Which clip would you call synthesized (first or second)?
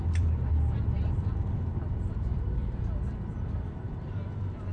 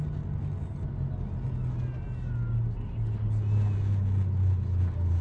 first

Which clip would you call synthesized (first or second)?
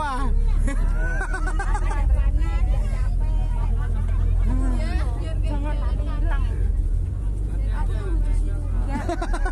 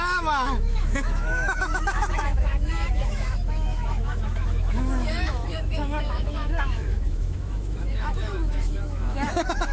second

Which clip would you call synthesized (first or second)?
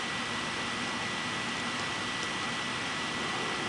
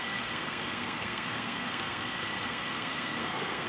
second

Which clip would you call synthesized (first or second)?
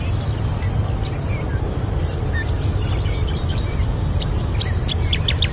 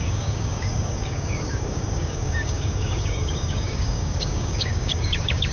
second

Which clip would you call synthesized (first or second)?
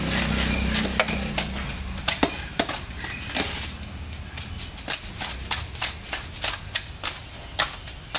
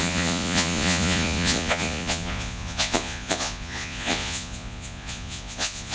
second